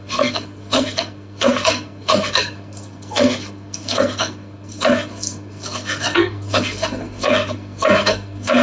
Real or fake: fake